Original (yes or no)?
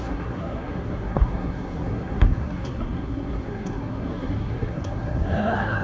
no